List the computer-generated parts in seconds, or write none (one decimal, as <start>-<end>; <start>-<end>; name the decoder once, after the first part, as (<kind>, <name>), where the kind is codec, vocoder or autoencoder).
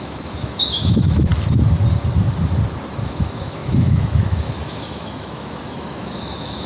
0.0-1.3 (autoencoder, DAC-VAE); 3.0-6.7